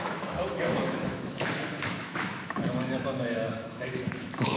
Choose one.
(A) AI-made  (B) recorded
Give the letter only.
A